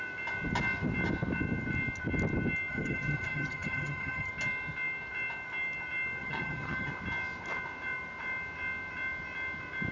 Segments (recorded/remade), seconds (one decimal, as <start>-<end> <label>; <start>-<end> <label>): 0.0-2.7 recorded; 2.7-4.3 remade; 4.3-6.2 recorded; 6.2-6.9 remade; 6.9-9.9 recorded